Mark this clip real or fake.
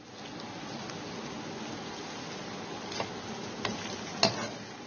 real